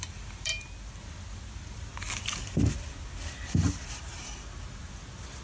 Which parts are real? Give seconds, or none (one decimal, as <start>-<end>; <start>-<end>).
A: 0.5-1.0; 1.9-4.8